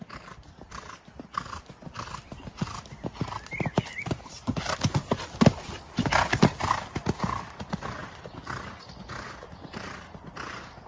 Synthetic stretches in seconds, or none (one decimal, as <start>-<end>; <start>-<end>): none